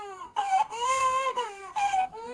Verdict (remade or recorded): remade